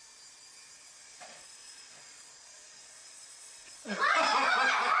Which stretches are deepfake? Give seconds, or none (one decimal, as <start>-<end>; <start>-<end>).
1.0-4.0